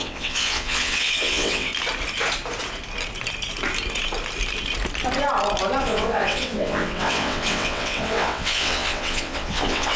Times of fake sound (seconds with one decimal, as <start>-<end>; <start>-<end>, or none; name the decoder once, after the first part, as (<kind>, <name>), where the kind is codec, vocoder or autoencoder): 0.0-1.7 (vocoder, WaveNeXt); 5.8-10.0